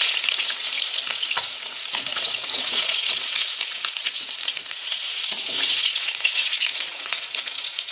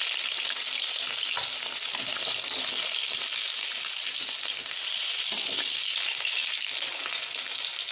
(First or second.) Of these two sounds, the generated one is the first